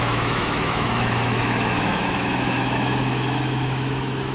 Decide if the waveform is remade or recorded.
remade